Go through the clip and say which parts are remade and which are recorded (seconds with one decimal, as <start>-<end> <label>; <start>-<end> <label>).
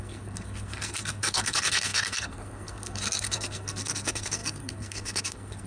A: 0.0-5.7 remade